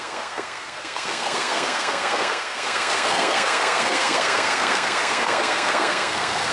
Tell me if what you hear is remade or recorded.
remade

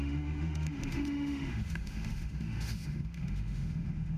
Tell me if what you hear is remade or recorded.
remade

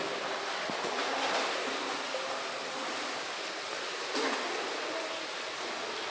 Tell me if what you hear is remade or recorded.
recorded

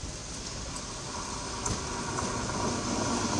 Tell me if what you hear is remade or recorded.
recorded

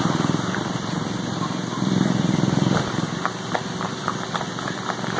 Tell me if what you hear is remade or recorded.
remade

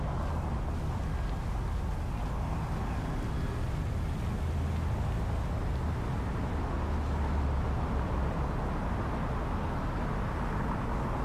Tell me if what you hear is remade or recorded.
recorded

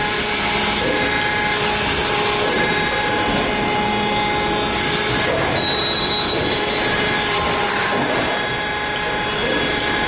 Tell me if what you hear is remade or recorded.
recorded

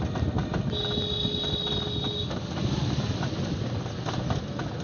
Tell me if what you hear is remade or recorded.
recorded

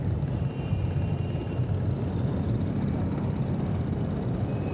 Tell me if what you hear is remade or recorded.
recorded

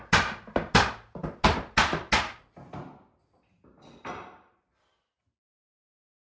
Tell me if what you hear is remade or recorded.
recorded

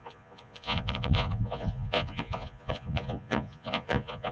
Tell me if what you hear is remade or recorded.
remade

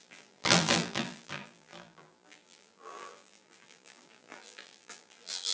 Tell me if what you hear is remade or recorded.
remade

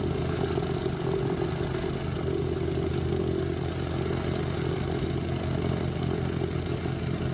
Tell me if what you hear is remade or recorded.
recorded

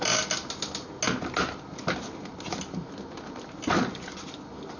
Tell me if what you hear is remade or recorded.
recorded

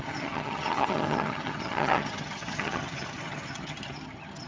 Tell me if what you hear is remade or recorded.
remade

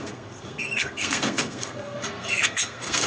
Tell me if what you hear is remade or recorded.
remade